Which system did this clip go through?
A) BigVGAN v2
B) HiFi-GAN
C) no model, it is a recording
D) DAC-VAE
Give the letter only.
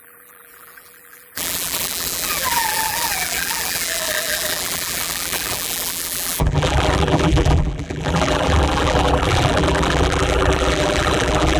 A